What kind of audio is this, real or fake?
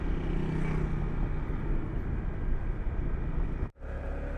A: real